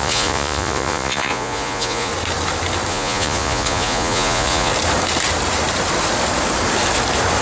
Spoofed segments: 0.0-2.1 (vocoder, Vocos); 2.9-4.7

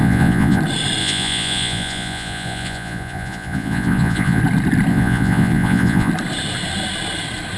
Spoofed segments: 0.0-0.6 (vocoder, Vocos); 1.0-4.4; 4.9-6.1

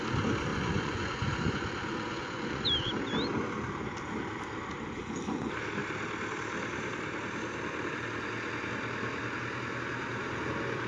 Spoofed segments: 0.5-2.6 (vocoder, Vocos)

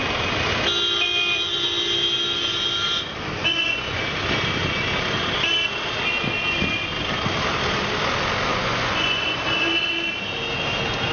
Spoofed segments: 3.4-4.0 (vocoder, Vocos); 8.5-9.4

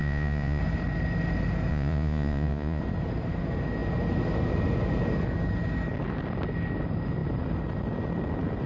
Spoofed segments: 0.0-0.6 (vocoder, Vocos); 1.7-2.8

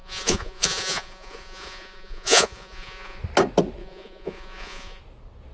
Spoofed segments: 0.0-3.2 (vocoder, Vocos); 3.8-5.0